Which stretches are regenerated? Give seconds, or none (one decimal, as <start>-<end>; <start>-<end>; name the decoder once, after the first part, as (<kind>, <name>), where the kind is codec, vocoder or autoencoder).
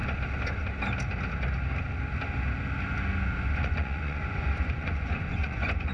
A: 3.5-5.9 (vocoder, Vocos)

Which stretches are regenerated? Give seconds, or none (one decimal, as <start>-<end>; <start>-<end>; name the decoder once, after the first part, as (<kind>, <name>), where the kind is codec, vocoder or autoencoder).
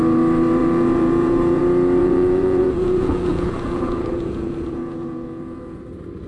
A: 0.6-1.6 (vocoder, Vocos); 2.0-5.8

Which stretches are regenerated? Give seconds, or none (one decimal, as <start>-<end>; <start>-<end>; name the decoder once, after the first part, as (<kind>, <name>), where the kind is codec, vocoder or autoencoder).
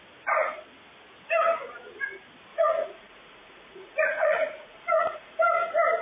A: 2.5-5.4 (vocoder, Vocos)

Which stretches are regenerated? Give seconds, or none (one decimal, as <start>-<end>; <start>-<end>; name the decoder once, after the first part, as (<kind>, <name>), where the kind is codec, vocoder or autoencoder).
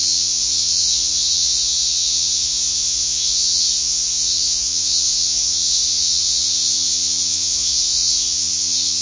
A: 0.0-9.0 (vocoder, Vocos)